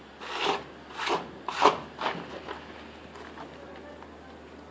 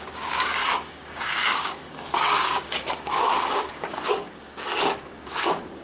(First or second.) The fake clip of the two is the second